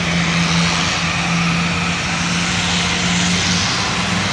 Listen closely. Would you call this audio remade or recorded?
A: recorded